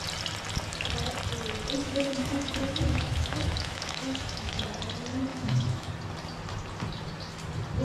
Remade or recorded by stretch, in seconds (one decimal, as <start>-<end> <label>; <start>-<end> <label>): 0.0-1.8 recorded; 1.8-4.6 remade; 4.6-5.3 recorded; 5.3-5.9 remade; 5.9-7.8 recorded